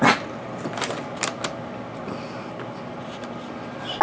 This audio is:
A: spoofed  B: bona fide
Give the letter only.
B